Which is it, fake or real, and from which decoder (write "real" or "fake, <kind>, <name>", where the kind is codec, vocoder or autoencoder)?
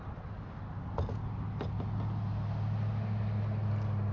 real